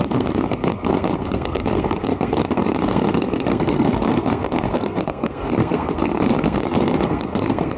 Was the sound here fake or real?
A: fake